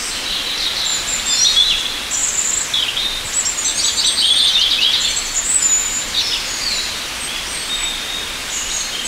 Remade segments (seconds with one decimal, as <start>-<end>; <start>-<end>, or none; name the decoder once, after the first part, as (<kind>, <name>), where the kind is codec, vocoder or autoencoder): 0.9-1.6 (vocoder, BigVGAN v2); 8.4-9.1